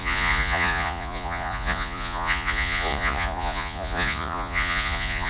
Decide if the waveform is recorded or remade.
remade